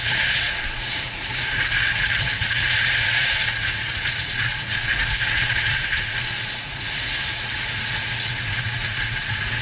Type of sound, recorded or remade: remade